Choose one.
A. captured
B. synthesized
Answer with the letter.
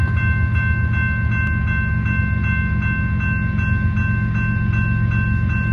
A